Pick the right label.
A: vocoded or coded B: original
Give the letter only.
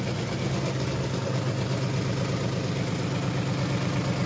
B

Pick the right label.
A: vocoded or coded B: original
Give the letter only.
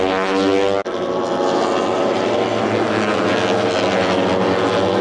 B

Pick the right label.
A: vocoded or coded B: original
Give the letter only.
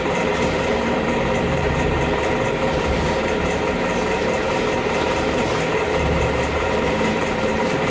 A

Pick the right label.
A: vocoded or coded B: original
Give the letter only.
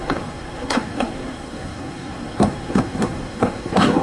A